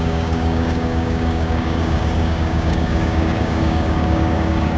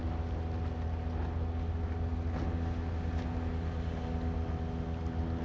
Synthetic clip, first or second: first